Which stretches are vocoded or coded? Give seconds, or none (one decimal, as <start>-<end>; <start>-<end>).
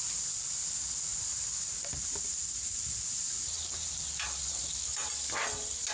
none